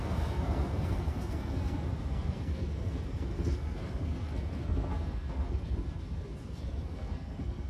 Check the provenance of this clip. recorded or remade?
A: remade